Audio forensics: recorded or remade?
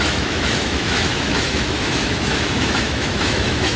remade